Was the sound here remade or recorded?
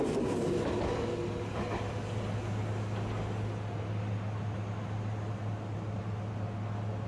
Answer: recorded